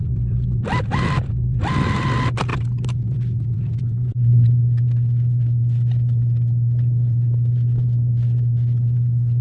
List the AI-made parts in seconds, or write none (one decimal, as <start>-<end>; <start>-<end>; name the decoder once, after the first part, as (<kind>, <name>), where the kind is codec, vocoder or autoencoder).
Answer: 2.5-3.8 (vocoder, BigVGAN v2)